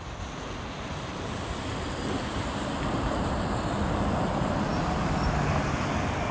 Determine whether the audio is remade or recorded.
recorded